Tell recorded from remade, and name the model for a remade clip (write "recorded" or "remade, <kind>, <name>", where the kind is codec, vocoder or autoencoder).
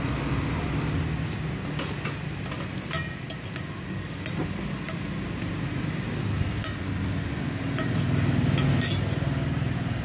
recorded